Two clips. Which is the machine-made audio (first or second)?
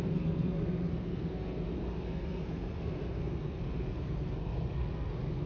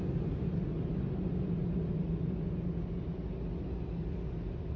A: first